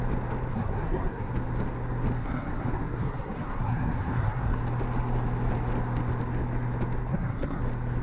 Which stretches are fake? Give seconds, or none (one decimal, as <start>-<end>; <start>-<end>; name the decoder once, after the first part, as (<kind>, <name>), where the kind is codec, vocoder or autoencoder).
0.5-1.3 (codec, SNAC); 2.2-4.6; 7.1-7.6